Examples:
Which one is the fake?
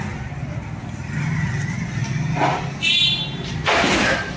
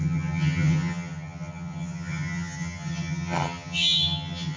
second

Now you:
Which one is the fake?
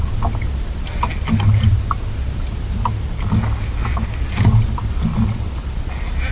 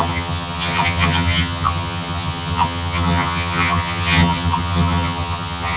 second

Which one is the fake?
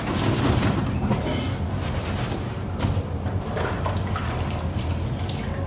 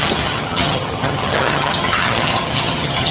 second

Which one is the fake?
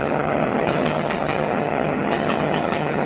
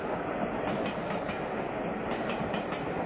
first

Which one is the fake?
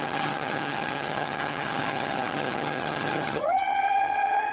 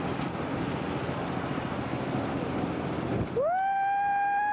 first